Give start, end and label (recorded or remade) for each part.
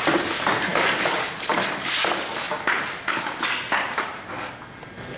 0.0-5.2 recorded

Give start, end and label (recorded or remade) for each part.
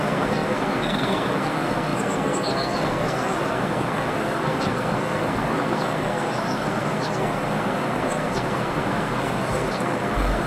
0.0-10.5 remade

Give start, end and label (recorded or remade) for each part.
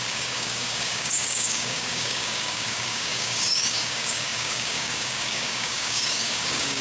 0.0-6.8 remade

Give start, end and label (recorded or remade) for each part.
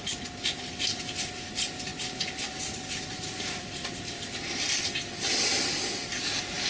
0.0-1.9 recorded; 1.9-4.8 remade; 4.8-6.7 recorded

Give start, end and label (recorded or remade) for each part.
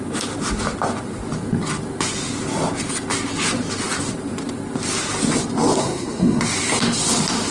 0.0-5.8 recorded; 5.8-6.4 remade; 6.4-7.5 recorded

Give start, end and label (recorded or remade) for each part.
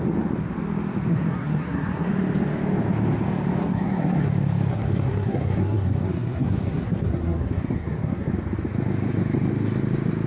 0.0-1.1 recorded; 1.1-2.1 remade; 2.1-3.6 recorded; 3.6-4.3 remade; 4.3-4.7 recorded; 4.7-8.3 remade; 8.3-10.3 recorded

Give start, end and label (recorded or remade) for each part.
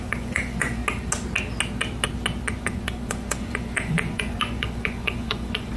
0.0-0.8 remade; 0.8-2.5 recorded; 2.5-5.8 remade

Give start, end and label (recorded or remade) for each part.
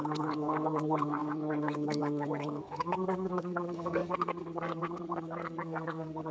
0.0-6.3 remade